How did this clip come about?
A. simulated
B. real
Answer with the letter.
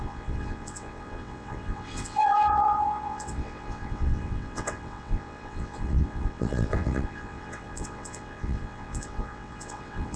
A